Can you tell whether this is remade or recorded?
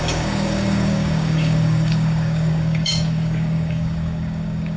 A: remade